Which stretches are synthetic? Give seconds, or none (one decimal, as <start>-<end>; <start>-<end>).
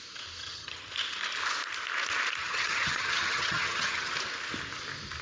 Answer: 0.4-0.9; 2.4-4.1